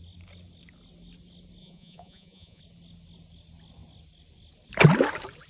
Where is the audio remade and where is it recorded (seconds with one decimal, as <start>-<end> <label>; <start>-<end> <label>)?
0.0-1.6 recorded; 1.6-2.6 remade; 2.6-5.5 recorded